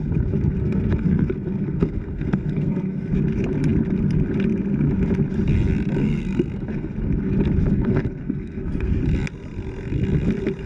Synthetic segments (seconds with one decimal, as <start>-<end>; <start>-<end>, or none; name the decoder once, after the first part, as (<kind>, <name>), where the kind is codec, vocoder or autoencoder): 0.6-3.1 (codec, SNAC); 6.0-6.9; 7.7-8.9